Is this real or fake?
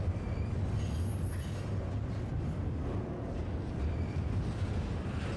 real